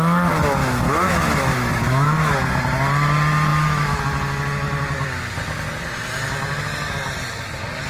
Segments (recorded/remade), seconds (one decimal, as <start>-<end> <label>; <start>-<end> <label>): 0.0-0.6 recorded; 0.6-2.3 remade; 2.3-3.5 recorded; 3.5-4.0 remade; 4.0-7.9 recorded